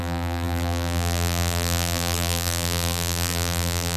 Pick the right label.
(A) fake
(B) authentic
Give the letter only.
A